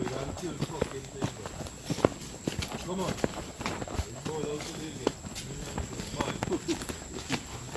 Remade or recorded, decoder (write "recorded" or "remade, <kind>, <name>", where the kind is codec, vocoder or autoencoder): recorded